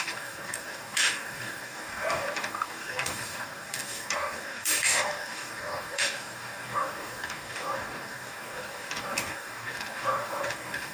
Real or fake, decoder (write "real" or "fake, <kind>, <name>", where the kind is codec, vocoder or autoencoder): fake, codec, DAC